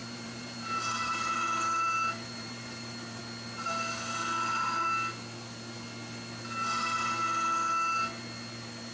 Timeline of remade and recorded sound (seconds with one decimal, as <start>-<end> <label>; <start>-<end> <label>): 0.0-3.2 remade; 3.2-8.9 recorded